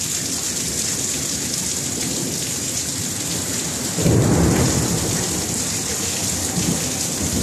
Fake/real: fake